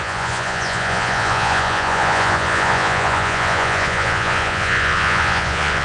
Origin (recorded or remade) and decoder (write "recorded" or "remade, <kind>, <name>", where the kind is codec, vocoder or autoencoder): remade, vocoder, Vocos